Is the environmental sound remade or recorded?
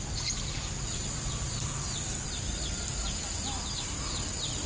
recorded